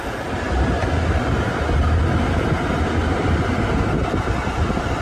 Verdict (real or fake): real